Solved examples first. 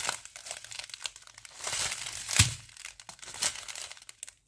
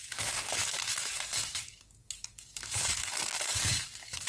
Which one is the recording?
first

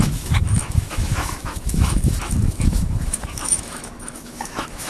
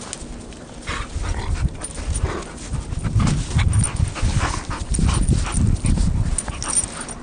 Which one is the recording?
second